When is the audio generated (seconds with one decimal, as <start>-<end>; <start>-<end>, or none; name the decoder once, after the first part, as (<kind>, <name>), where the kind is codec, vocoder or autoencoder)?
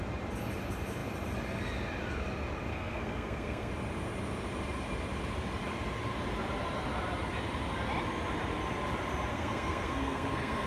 2.7-3.7 (codec, SNAC); 9.3-10.7